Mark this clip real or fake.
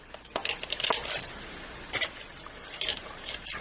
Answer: real